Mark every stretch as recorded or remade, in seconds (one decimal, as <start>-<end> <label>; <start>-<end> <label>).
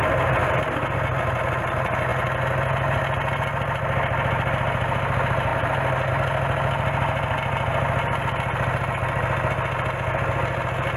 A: 0.0-11.0 recorded